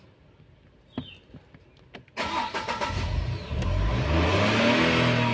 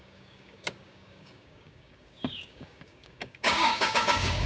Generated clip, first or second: second